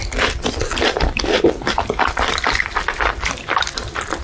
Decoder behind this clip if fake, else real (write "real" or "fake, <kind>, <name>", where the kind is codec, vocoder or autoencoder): fake, vocoder, BigVGAN v2